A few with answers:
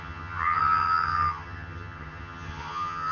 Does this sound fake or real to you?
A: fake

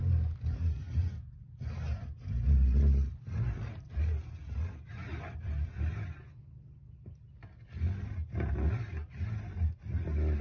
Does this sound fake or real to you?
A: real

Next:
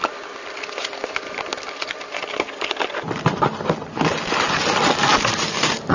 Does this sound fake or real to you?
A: real